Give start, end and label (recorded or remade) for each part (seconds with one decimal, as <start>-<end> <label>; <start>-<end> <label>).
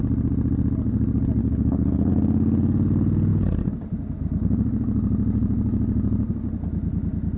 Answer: 0.0-1.4 recorded; 1.4-2.1 remade; 2.1-7.4 recorded